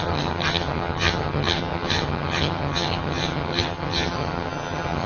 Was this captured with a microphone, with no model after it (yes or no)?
no